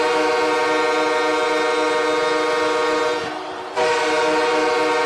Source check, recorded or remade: recorded